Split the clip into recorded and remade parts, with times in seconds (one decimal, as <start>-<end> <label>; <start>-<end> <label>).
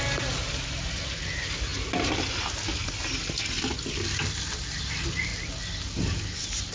0.0-6.7 recorded